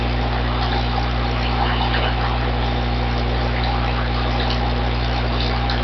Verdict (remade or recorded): recorded